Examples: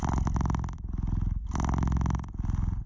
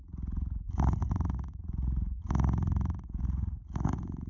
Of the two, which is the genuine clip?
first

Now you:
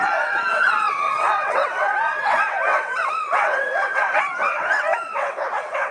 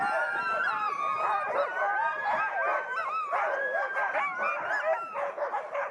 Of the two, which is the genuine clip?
second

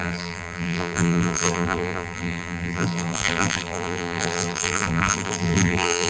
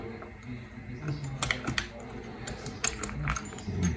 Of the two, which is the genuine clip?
second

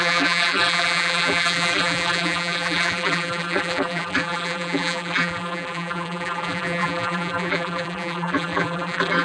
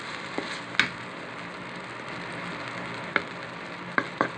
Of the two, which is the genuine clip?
second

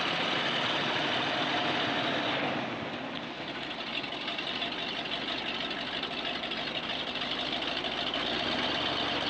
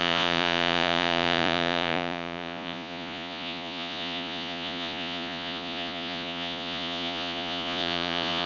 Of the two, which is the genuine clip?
first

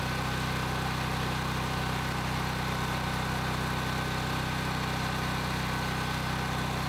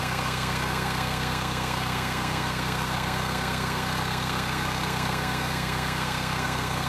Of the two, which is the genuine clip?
first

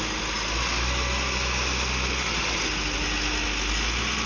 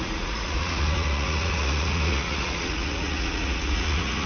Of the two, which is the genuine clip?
first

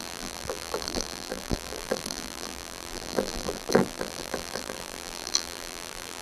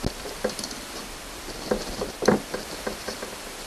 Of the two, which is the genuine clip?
second